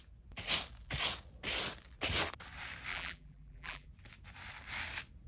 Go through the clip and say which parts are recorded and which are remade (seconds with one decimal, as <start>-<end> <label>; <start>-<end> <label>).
0.0-2.9 recorded; 2.9-3.9 remade; 3.9-5.3 recorded